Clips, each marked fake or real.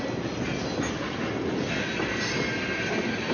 real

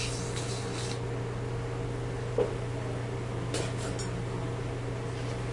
real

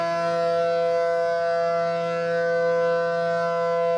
real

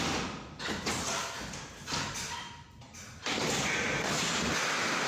real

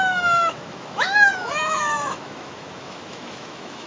fake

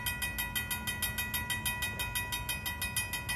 real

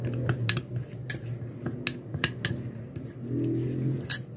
real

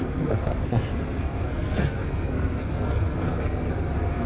fake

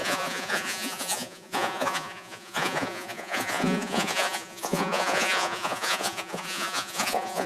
fake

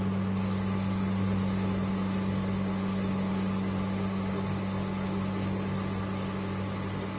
real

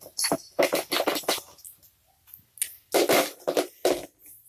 real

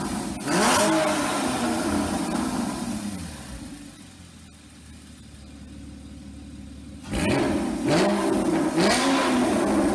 real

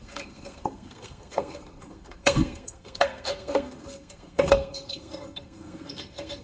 fake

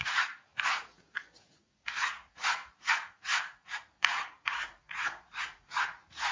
fake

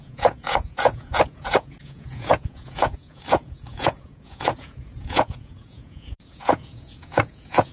fake